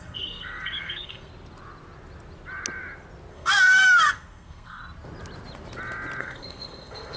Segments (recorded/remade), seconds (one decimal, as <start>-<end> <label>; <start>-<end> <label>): 0.0-1.3 remade; 1.3-3.3 recorded; 3.3-4.8 remade; 4.8-6.2 recorded; 6.2-7.2 remade